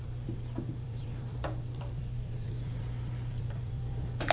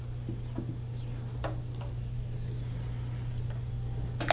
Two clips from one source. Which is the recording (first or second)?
second